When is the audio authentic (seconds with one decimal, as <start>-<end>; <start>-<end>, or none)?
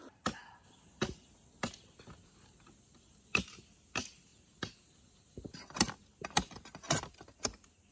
0.0-7.9